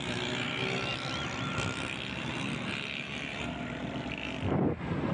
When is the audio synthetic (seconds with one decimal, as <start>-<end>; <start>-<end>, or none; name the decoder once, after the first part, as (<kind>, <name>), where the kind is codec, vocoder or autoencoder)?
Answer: none